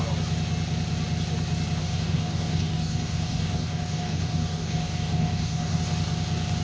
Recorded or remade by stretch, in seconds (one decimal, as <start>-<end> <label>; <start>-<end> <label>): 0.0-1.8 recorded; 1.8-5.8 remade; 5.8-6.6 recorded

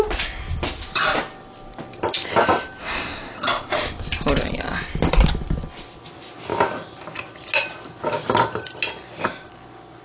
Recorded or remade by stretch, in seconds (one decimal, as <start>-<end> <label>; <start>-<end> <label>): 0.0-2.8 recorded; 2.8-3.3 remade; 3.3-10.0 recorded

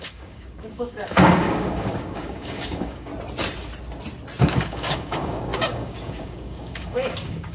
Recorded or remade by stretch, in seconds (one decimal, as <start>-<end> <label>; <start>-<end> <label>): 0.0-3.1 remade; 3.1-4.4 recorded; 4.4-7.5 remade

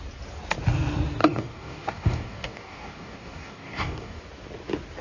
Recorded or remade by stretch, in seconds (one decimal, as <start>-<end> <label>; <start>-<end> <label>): 0.0-1.2 recorded; 1.2-4.2 remade; 4.2-5.0 recorded

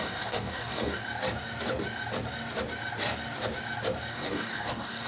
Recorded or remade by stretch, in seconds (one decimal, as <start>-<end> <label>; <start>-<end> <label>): 0.0-1.0 remade; 1.0-4.1 recorded; 4.1-5.1 remade